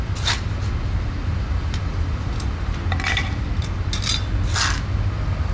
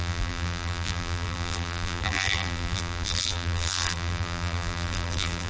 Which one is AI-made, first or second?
second